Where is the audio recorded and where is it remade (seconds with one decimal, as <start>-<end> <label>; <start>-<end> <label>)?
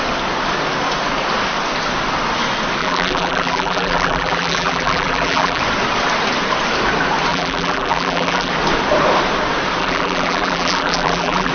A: 0.0-2.8 recorded; 2.8-5.6 remade; 5.6-7.3 recorded; 7.3-8.5 remade; 8.5-9.8 recorded; 9.8-11.5 remade